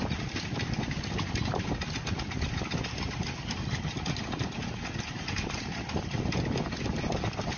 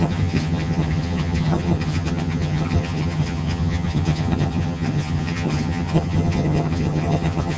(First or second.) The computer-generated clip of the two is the second